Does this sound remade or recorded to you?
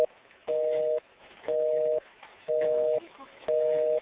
remade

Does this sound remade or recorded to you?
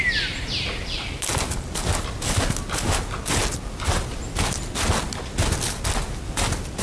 recorded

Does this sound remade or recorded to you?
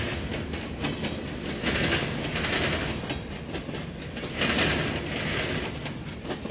recorded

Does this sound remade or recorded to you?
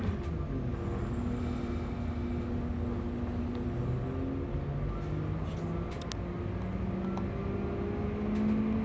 recorded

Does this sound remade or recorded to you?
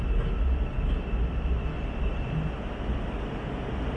recorded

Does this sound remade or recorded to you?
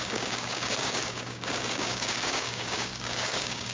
remade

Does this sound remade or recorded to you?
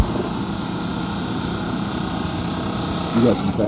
recorded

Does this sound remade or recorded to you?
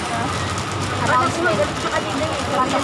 recorded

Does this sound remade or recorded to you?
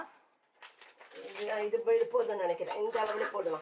recorded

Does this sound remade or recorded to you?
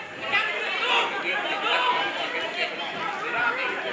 recorded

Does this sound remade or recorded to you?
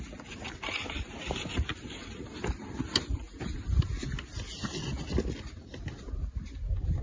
recorded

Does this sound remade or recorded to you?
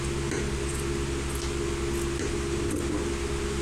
recorded